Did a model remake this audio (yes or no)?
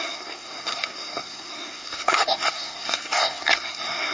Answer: yes